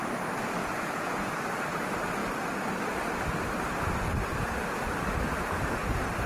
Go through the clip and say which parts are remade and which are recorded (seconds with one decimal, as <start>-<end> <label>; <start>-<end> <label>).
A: 0.0-0.6 recorded; 0.6-1.4 remade; 1.4-6.3 recorded